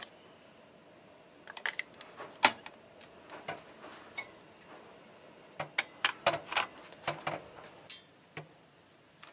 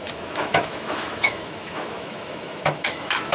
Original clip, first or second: first